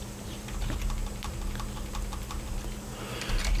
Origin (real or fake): fake